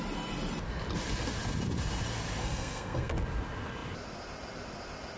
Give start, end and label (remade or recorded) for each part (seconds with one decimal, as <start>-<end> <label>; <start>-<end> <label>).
0.0-2.4 recorded; 2.4-3.1 remade; 3.1-5.2 recorded